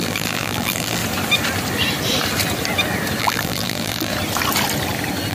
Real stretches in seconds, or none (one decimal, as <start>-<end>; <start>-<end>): 1.0-3.2; 4.1-5.3